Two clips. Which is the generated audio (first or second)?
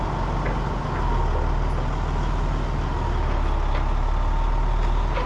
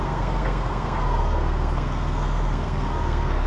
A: second